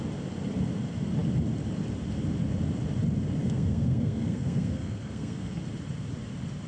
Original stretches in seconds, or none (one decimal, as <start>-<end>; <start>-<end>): 0.0-3.4; 5.6-6.7